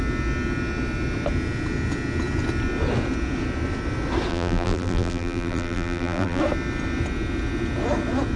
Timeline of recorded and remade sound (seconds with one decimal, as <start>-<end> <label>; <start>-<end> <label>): 0.0-4.3 recorded; 4.3-6.4 remade; 6.4-8.4 recorded